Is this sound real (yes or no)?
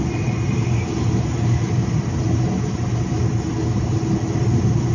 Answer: yes